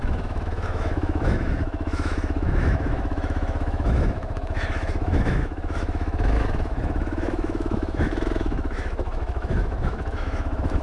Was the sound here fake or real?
fake